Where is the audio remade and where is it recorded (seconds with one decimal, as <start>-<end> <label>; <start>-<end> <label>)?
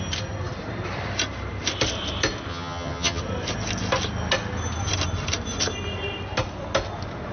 0.0-2.5 recorded; 2.5-3.2 remade; 3.2-7.3 recorded